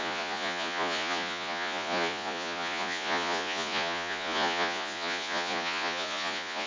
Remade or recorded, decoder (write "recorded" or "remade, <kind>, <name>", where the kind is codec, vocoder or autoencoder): remade, vocoder, Vocos